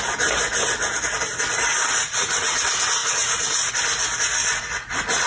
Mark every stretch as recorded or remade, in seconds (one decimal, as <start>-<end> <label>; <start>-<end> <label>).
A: 0.0-1.9 recorded; 1.9-2.6 remade; 2.6-3.0 recorded; 3.0-3.7 remade; 3.7-4.4 recorded; 4.4-5.3 remade